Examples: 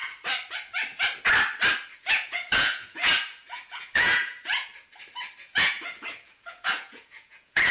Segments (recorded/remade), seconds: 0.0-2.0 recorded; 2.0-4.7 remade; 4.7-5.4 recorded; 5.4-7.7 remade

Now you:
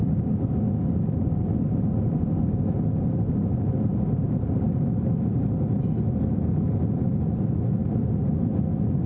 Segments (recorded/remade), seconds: 0.0-9.1 recorded

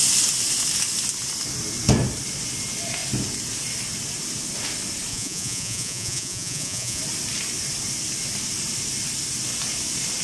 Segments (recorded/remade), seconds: 0.0-5.1 recorded; 5.1-7.0 remade; 7.0-10.2 recorded

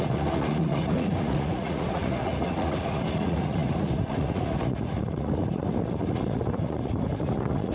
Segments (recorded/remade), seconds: 0.0-7.7 remade

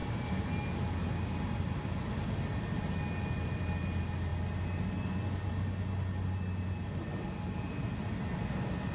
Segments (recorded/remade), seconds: 0.0-8.9 recorded

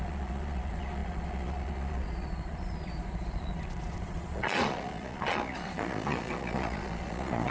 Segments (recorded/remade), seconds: 0.0-7.5 remade

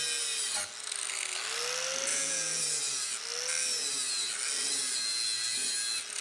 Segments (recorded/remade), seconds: 0.0-2.1 recorded; 2.1-2.6 remade; 2.6-6.2 recorded

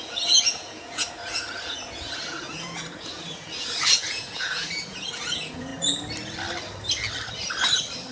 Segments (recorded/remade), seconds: 0.0-5.7 remade; 5.7-8.1 recorded